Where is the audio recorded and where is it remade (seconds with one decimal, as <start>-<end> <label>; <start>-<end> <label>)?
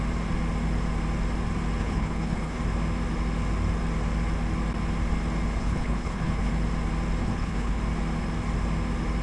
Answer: 0.0-1.8 recorded; 1.8-2.6 remade; 2.6-5.6 recorded; 5.6-6.5 remade; 6.5-7.2 recorded; 7.2-7.8 remade; 7.8-9.2 recorded